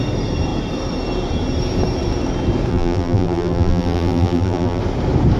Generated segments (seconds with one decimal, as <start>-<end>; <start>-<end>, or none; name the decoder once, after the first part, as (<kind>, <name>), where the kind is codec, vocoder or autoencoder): 2.7-4.8 (vocoder, BigVGAN v2)